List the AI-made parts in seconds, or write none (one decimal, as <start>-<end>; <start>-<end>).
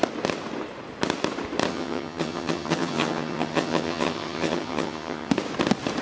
1.7-5.3